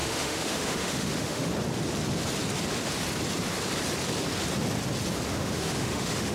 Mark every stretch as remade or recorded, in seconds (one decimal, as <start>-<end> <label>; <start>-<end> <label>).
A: 0.0-1.5 remade; 1.5-5.3 recorded; 5.3-6.3 remade